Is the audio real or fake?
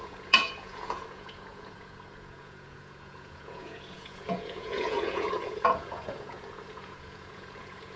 fake